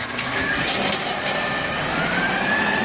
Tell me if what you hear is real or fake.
real